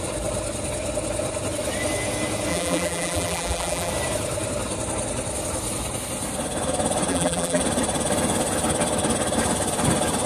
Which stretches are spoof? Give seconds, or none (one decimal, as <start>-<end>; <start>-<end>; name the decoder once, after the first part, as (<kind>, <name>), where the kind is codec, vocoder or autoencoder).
2.5-3.9 (vocoder, BigVGAN v2); 7.1-7.6